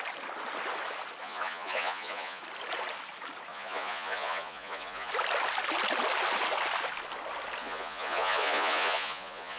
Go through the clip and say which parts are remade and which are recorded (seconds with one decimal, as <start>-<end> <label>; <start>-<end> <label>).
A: 0.0-1.2 recorded; 1.2-2.4 remade; 2.4-3.5 recorded; 3.5-5.1 remade; 5.1-7.6 recorded; 7.6-9.6 remade